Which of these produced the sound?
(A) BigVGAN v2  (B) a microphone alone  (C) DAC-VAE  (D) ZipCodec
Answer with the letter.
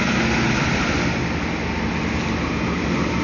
B